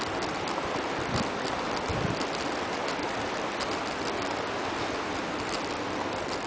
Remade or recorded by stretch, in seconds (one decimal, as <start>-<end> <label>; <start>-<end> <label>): 0.0-6.5 recorded